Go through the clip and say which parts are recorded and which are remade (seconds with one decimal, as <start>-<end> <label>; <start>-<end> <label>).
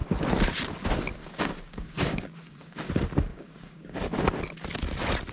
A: 0.0-1.2 recorded; 1.2-2.9 remade; 2.9-3.3 recorded; 3.3-4.0 remade; 4.0-5.3 recorded